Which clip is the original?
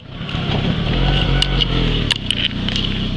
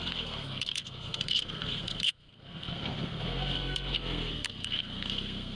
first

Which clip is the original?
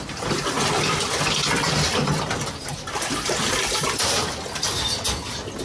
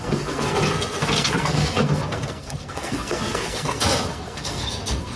first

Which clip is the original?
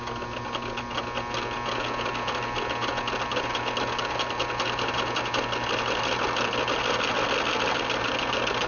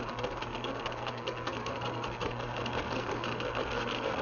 first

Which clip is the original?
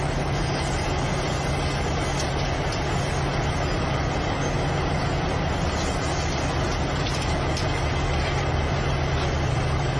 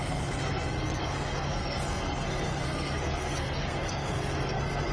first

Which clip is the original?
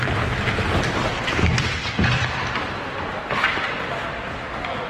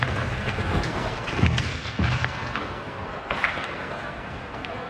first